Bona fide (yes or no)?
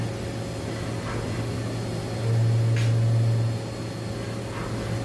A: yes